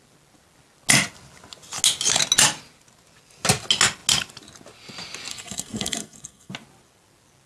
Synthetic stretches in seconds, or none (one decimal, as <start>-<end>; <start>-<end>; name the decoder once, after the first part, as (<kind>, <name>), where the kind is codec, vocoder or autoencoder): 5.3-6.5 (codec, SNAC)